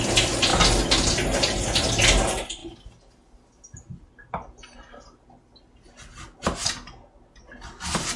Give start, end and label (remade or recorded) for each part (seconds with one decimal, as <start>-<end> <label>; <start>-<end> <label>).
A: 0.0-8.2 recorded